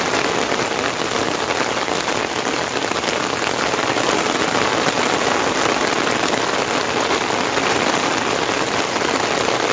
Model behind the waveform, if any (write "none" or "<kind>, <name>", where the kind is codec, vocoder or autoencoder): none